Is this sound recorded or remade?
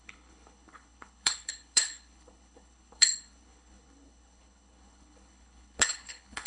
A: remade